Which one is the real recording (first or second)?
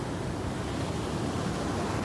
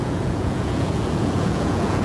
first